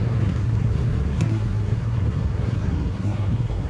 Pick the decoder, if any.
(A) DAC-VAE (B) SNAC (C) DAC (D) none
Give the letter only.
B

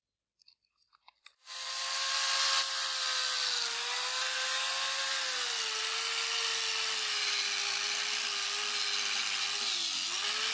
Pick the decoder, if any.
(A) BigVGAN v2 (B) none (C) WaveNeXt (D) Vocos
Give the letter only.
B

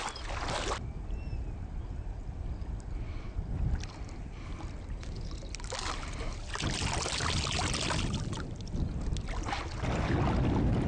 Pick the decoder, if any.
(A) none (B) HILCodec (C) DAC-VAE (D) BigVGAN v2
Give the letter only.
A